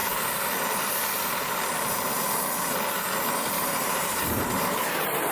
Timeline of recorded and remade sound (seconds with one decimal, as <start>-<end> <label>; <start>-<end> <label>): 0.0-3.7 recorded; 3.7-5.3 remade